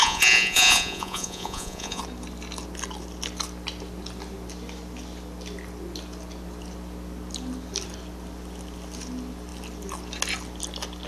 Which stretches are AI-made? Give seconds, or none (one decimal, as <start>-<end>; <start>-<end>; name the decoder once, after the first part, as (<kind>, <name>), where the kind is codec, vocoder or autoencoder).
0.0-2.0 (vocoder, Vocos)